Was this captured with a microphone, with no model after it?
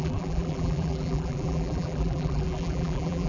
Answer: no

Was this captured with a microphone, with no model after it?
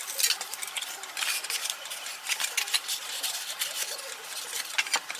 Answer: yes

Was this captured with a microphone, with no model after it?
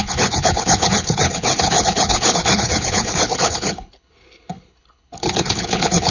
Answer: no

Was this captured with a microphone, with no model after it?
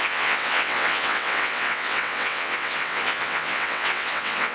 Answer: no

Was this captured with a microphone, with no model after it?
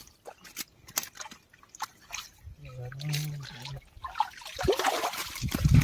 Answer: yes